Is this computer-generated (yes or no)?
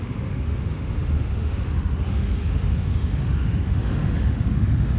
yes